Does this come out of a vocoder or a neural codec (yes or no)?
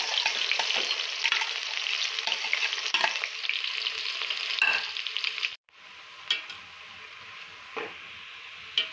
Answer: no